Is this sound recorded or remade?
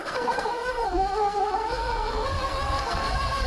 remade